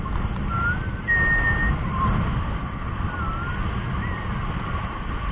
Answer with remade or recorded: recorded